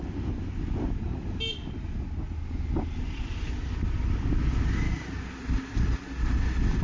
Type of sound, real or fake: real